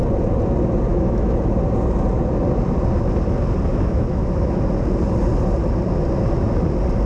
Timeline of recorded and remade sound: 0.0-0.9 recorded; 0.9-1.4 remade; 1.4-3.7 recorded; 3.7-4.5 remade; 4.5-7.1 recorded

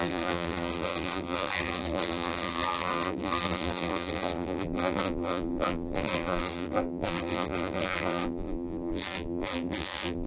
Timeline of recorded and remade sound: 0.0-10.3 remade